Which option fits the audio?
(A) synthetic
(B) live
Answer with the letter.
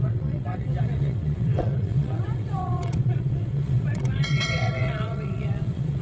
A